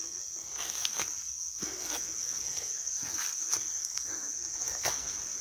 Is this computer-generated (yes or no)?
yes